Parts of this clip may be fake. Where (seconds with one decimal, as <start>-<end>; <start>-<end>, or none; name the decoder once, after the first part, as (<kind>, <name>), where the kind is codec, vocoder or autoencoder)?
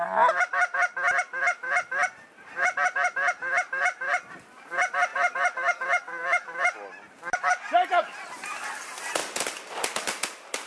none